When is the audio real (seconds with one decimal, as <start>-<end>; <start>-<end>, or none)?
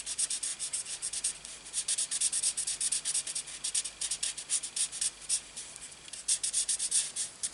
0.5-5.0